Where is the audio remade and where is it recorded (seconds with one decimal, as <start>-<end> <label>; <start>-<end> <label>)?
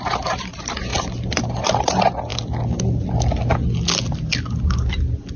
0.0-0.9 remade; 0.9-1.8 recorded; 1.8-2.3 remade; 2.3-5.4 recorded